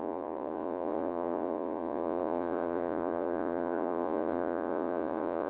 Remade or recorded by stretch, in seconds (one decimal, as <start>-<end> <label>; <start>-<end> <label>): 0.0-5.5 remade